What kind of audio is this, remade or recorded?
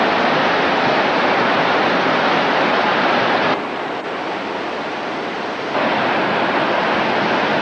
recorded